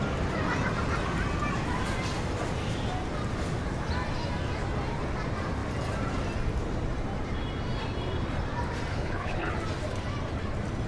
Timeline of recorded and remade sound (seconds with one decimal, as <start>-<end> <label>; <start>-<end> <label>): 0.0-8.9 recorded; 8.9-9.5 remade; 9.5-10.9 recorded

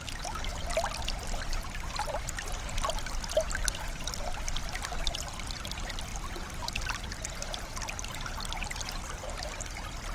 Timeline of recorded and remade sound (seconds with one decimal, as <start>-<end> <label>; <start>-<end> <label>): 0.0-10.1 recorded

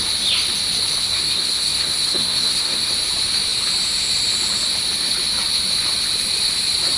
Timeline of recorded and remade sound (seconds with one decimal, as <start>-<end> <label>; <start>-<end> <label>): 0.0-1.0 recorded; 1.0-2.9 remade; 2.9-7.0 recorded

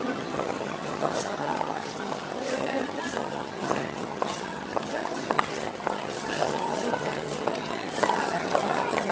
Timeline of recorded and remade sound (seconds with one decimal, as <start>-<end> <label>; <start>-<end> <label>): 0.0-9.1 remade

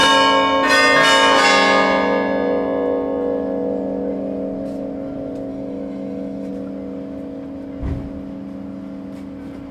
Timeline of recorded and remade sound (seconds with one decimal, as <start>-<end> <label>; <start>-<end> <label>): 0.0-5.5 recorded; 5.5-6.5 remade; 6.5-9.7 recorded

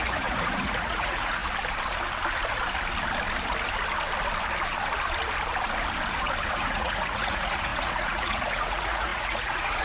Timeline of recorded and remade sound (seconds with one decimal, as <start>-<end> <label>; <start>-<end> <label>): 0.0-1.4 remade; 1.4-6.5 recorded; 6.5-9.8 remade

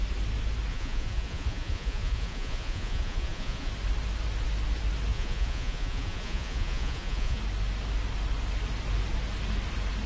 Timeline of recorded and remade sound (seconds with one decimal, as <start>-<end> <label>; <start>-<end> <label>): 0.0-0.7 recorded; 0.7-3.7 remade; 3.7-5.1 recorded; 5.1-7.4 remade; 7.4-10.1 recorded

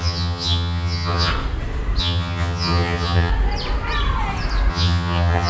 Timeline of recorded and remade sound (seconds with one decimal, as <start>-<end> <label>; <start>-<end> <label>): 0.0-1.3 remade; 1.3-2.0 recorded; 2.0-3.3 remade; 3.3-4.7 recorded; 4.7-5.5 remade